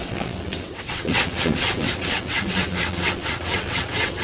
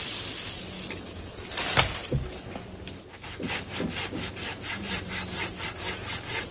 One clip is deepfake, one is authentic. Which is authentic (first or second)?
second